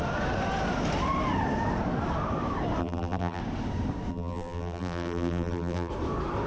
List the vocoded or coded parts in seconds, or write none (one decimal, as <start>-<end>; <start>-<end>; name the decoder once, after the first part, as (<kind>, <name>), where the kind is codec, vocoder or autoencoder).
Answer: 2.8-3.4 (vocoder, BigVGAN v2); 4.1-5.9